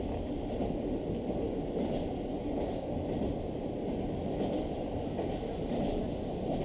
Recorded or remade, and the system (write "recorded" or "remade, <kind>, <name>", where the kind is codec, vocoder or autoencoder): recorded